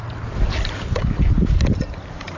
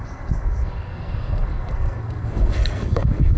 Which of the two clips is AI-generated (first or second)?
second